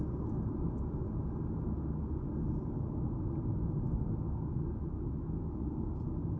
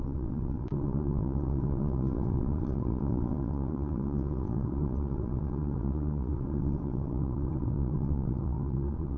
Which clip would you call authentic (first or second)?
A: first